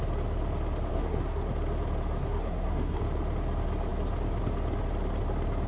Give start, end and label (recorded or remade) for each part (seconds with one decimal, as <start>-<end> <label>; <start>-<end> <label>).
0.0-0.9 recorded; 0.9-1.5 remade; 1.5-2.2 recorded; 2.2-3.0 remade; 3.0-5.7 recorded